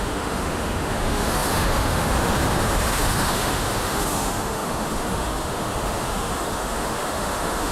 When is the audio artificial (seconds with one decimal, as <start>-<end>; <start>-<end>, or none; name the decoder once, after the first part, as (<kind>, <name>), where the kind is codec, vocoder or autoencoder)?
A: 0.0-7.7 (autoencoder, DAC-VAE)